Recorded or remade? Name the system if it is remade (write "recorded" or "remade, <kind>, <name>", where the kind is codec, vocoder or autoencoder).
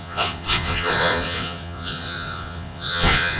remade, vocoder, Vocos